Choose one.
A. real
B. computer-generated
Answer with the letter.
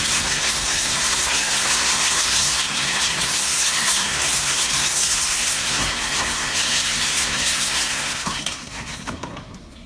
B